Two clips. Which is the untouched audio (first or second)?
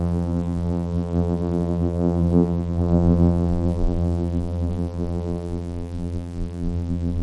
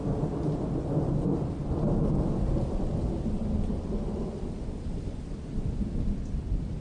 second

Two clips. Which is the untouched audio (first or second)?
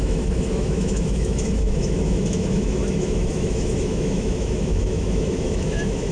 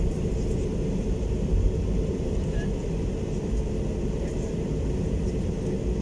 second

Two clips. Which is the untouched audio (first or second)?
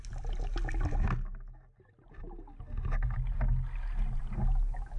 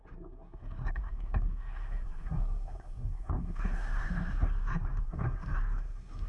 first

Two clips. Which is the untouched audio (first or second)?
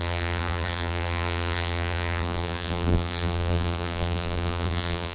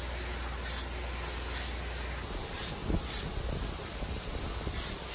second